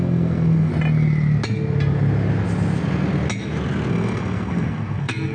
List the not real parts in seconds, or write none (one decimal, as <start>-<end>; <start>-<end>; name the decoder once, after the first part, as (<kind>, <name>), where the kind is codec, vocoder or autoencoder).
0.0-0.7 (codec, SNAC); 3.9-5.3